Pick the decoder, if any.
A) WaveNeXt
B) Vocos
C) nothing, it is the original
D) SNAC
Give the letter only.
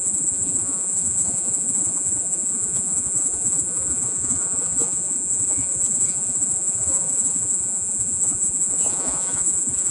B